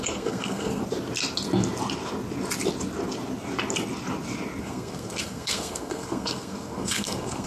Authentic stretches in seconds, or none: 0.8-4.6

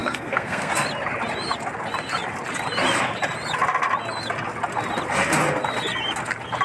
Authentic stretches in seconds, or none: 0.7-6.6